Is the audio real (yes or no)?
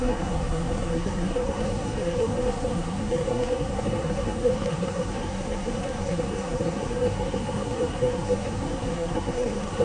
no